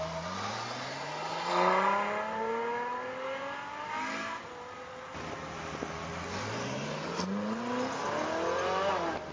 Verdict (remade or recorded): recorded